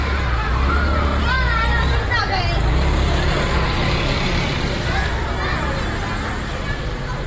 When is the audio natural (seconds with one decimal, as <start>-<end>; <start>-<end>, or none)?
0.0-2.7; 5.1-7.3